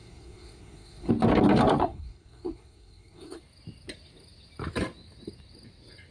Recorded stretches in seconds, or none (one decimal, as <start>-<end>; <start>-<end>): 1.1-1.8; 3.4-6.1